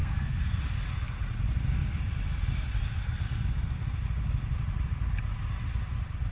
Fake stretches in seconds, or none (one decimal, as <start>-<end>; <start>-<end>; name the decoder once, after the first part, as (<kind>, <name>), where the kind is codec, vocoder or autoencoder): 0.0-0.6 (codec, SNAC)